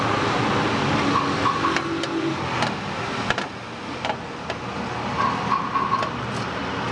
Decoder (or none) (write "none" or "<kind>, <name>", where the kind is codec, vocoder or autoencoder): none